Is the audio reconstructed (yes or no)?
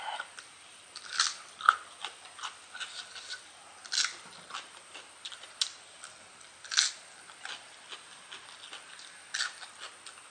no